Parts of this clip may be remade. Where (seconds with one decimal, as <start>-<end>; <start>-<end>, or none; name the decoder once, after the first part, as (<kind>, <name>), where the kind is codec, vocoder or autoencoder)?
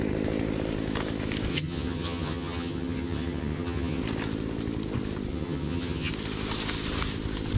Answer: 1.5-4.0 (vocoder, HiFi-GAN); 5.3-6.1